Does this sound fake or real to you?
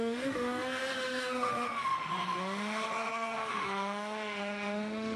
fake